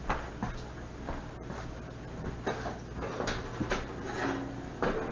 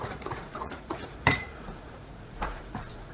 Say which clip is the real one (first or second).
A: first